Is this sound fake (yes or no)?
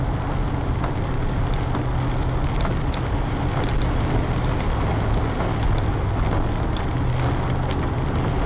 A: no